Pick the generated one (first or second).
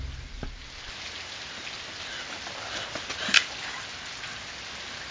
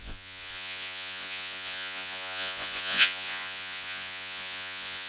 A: second